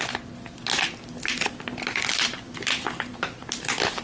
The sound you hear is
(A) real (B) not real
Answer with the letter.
A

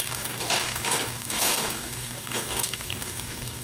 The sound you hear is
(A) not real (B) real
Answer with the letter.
A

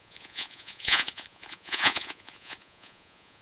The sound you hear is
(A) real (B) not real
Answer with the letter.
B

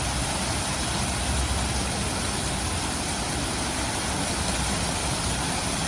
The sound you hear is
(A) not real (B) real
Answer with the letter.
B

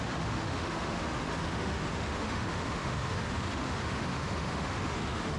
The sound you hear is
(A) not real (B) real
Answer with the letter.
A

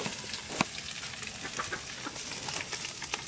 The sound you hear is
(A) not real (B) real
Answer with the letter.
B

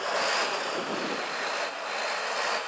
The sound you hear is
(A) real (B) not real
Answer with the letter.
A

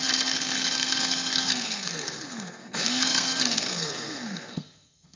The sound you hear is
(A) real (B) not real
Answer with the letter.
B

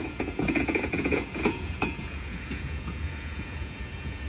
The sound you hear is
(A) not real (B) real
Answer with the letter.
A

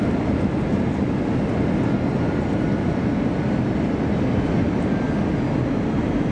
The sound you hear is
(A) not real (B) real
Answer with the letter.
B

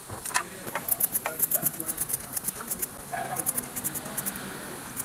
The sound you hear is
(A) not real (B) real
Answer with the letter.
B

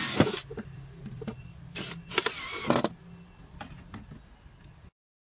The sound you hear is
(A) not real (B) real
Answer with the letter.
B